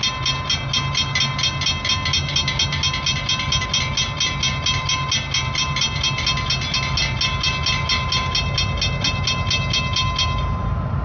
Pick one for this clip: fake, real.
real